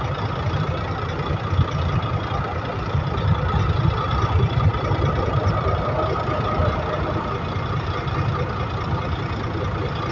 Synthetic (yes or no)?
no